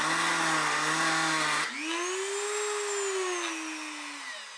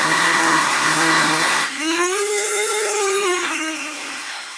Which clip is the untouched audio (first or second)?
first